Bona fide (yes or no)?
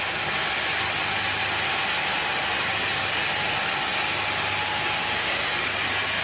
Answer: yes